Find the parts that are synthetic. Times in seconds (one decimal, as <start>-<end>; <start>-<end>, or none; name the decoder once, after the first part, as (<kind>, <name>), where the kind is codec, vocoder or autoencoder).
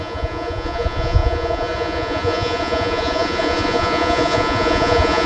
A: 0.0-5.3 (vocoder, Vocos)